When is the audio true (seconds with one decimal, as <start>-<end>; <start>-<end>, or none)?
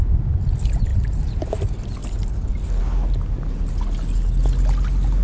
0.0-0.9; 1.4-5.2